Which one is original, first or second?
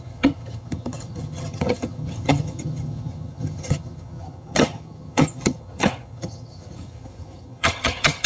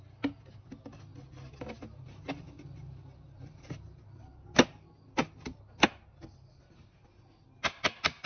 second